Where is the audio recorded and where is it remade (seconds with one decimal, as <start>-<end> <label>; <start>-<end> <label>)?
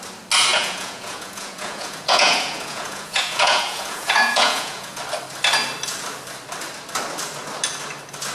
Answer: 0.0-0.5 recorded; 0.5-5.0 remade; 5.0-8.3 recorded